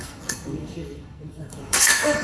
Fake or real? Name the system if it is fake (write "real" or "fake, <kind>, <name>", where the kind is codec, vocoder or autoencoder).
fake, codec, SNAC